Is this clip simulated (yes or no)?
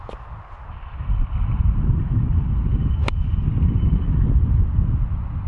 no